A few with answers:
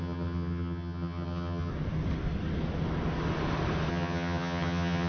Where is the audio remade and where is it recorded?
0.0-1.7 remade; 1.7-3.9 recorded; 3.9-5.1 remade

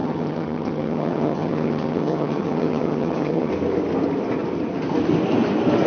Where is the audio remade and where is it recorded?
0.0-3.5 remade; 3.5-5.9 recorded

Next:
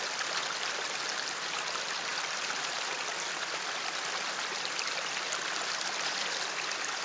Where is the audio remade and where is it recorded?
0.0-7.0 recorded

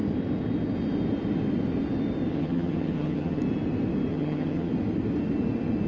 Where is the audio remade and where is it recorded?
0.0-2.3 recorded; 2.3-3.4 remade; 3.4-4.1 recorded; 4.1-4.7 remade; 4.7-5.9 recorded

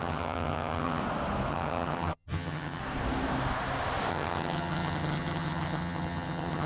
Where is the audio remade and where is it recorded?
0.0-1.0 remade; 1.0-1.5 recorded; 1.5-2.8 remade; 2.8-4.1 recorded; 4.1-6.7 remade